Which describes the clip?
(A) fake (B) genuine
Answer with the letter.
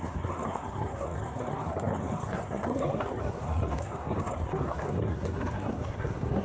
A